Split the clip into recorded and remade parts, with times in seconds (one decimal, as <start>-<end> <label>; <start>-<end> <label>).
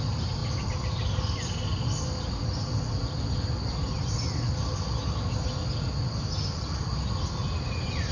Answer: 0.0-8.1 recorded